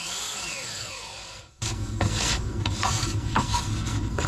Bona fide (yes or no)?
no